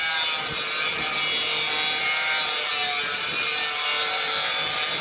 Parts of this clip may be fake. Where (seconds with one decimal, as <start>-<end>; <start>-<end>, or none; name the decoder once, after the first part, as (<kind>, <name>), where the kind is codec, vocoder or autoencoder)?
none